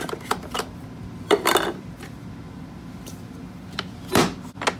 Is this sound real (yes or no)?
yes